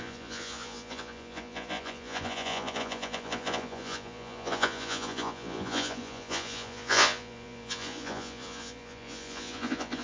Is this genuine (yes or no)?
no